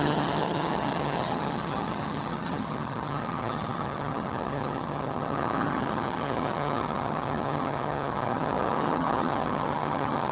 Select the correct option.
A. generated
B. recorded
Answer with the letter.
A